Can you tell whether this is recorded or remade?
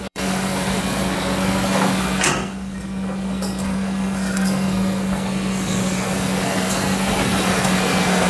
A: remade